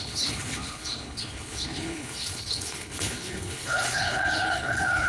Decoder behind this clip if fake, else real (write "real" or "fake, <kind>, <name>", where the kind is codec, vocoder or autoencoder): fake, codec, HILCodec